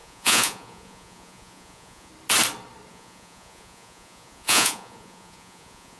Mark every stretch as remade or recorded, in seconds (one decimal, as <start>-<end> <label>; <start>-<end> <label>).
0.0-2.1 remade; 2.1-2.9 recorded; 2.9-6.0 remade